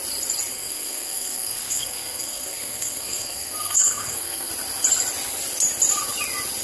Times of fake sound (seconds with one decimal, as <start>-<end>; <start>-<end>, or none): 0.5-4.5